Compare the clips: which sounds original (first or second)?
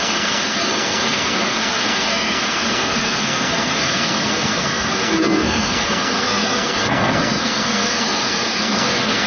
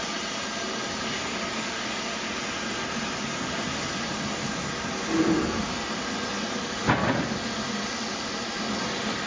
second